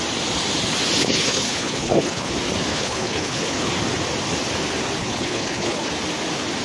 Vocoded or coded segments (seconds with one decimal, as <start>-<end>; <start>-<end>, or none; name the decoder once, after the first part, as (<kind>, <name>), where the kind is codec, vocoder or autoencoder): 1.0-2.3 (codec, HILCodec); 2.7-3.7; 5.0-5.9